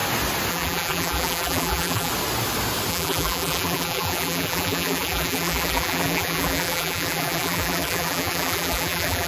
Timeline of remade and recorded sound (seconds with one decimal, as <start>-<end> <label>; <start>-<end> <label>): 0.0-0.5 recorded; 0.5-2.1 remade; 2.1-2.9 recorded; 2.9-9.3 remade